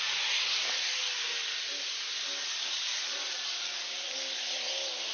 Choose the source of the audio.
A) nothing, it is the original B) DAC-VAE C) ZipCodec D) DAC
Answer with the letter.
A